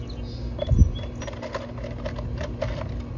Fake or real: real